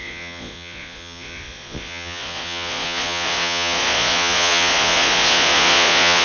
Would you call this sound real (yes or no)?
no